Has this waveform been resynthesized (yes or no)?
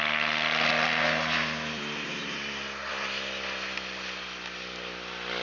no